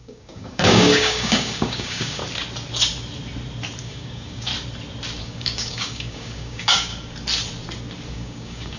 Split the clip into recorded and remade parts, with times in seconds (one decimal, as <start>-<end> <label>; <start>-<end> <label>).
0.0-2.2 remade; 2.2-3.8 recorded; 3.8-4.5 remade; 4.5-5.2 recorded; 5.2-6.9 remade; 6.9-8.1 recorded; 8.1-8.8 remade